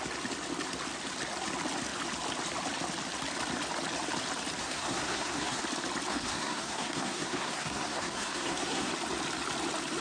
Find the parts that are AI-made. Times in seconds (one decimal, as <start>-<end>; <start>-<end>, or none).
4.6-5.6; 6.1-8.9